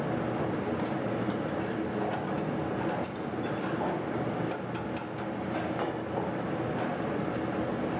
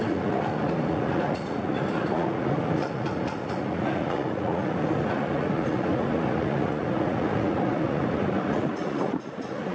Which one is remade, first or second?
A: second